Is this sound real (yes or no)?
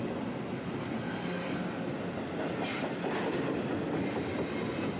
yes